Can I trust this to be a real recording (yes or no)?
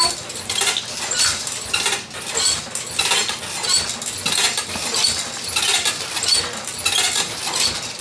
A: yes